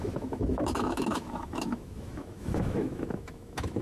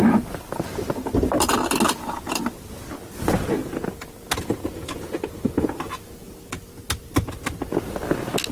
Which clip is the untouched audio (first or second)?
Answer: second